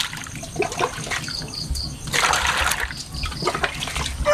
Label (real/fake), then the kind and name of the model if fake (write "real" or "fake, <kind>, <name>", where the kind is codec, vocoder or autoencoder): real